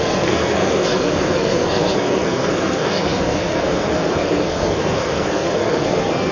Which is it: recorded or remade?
remade